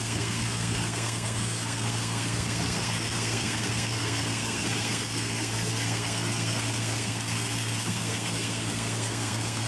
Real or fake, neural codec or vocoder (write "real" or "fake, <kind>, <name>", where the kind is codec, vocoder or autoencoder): fake, codec, SNAC